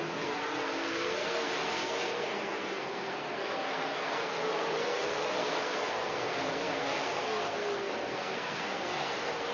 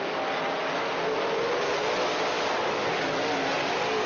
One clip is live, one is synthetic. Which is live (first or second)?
second